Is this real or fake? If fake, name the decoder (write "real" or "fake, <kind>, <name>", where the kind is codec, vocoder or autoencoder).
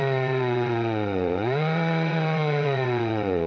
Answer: fake, vocoder, WaveNeXt